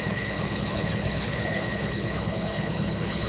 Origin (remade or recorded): remade